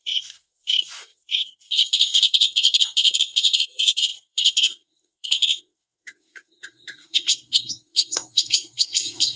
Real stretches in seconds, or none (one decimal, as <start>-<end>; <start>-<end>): none